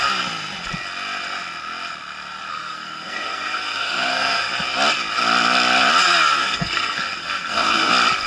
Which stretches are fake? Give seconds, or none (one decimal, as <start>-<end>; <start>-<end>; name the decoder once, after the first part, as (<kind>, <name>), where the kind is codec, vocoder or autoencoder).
2.5-4.5 (codec, SNAC); 6.4-7.9